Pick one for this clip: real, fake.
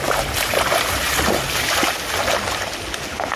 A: real